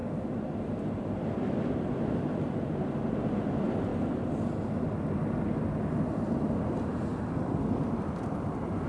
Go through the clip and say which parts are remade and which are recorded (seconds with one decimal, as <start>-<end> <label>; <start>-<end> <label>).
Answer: 0.0-3.9 remade; 3.9-6.0 recorded; 6.0-8.9 remade